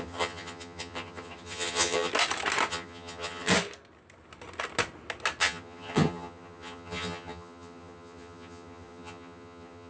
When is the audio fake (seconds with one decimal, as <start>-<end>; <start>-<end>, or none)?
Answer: 0.0-2.1; 2.7-3.5; 5.4-9.9